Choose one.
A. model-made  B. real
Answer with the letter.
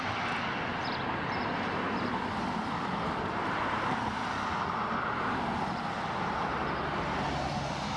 B